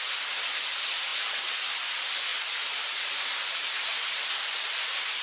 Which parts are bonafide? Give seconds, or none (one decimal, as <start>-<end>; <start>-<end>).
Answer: 0.0-5.2